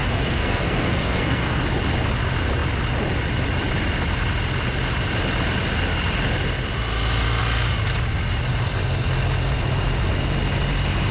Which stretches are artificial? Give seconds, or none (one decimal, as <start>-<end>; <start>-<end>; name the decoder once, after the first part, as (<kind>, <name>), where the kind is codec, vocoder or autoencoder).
0.0-1.6 (codec, SNAC)